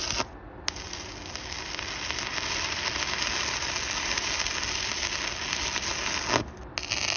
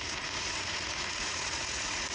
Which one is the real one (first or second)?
first